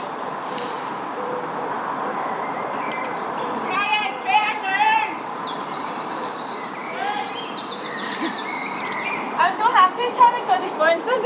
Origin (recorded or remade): remade